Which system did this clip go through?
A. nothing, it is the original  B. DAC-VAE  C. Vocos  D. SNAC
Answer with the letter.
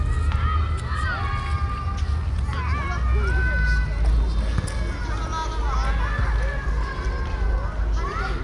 A